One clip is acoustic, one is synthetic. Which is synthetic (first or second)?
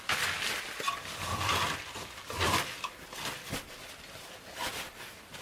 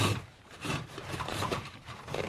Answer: second